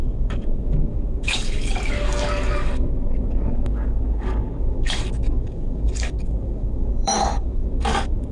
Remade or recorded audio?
remade